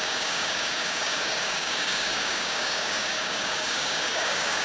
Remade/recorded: remade